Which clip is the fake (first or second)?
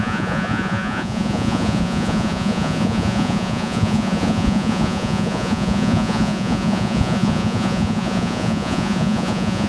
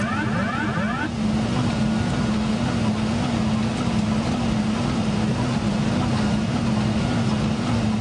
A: first